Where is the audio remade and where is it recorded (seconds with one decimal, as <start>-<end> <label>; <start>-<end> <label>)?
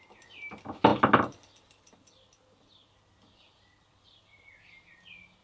0.0-5.4 recorded